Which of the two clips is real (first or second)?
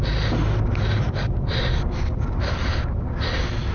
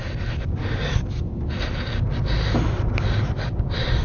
first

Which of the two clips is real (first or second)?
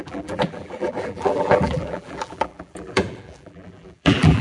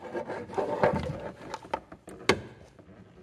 second